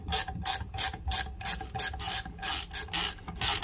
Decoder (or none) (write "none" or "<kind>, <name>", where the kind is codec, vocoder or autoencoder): none